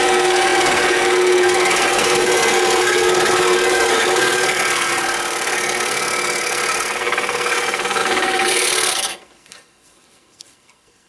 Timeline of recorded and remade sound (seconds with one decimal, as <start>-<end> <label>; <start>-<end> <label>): 0.0-11.1 remade

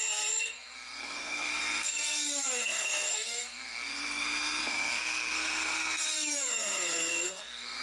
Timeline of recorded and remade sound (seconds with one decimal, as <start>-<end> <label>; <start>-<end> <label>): 0.0-7.8 remade

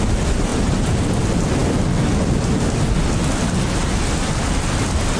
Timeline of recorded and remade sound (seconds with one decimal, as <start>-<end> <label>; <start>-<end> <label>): 0.0-5.2 recorded

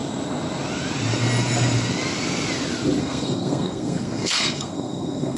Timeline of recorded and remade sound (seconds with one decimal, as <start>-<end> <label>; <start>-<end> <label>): 0.0-3.0 recorded; 3.0-5.4 remade

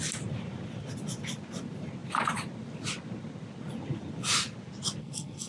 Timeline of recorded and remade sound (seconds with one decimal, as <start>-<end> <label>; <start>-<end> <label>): 0.0-5.0 recorded; 5.0-5.5 remade

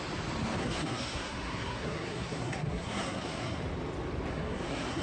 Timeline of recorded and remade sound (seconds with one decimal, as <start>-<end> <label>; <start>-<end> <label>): 0.0-0.6 recorded; 0.6-3.6 remade; 3.6-4.3 recorded; 4.3-5.0 remade

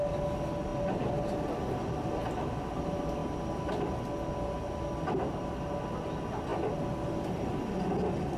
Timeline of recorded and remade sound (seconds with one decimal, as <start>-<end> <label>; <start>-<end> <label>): 0.0-8.4 recorded

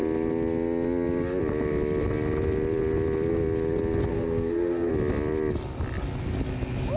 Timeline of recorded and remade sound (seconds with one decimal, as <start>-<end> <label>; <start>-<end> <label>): 0.0-4.1 recorded; 4.1-4.9 remade; 4.9-7.0 recorded